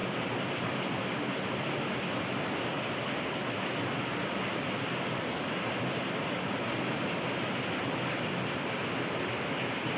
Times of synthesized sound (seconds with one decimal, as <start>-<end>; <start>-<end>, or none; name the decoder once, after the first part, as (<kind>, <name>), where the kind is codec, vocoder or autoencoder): none